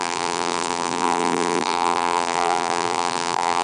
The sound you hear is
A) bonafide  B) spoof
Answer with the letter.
B